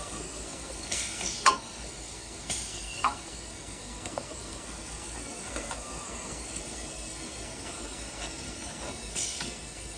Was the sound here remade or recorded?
remade